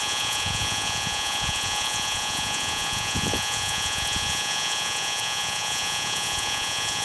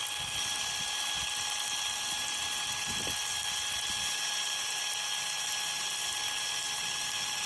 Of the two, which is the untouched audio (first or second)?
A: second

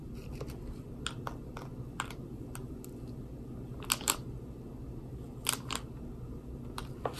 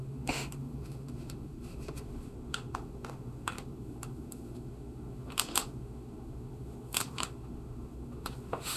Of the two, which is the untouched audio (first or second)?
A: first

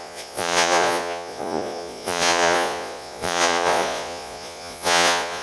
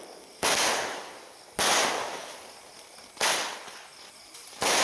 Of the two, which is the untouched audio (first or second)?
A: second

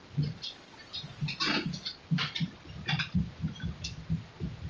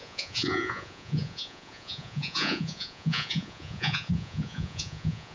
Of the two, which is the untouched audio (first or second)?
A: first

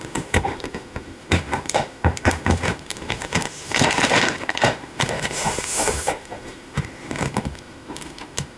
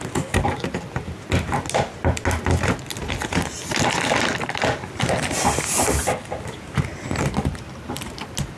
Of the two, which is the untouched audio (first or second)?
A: second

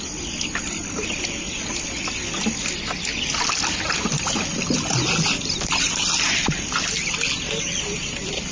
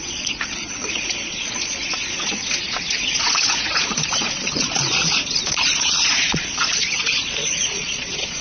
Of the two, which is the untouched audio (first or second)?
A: first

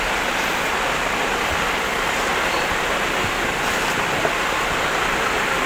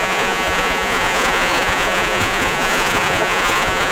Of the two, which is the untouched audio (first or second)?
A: first